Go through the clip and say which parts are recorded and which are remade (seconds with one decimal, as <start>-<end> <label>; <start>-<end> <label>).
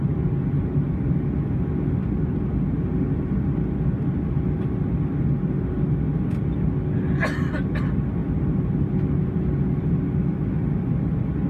0.0-11.5 recorded